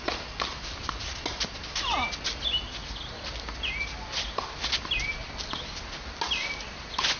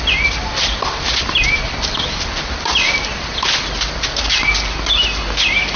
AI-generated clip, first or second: second